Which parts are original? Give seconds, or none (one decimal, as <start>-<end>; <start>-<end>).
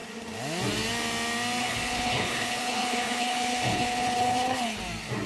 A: 0.0-1.6; 4.8-5.3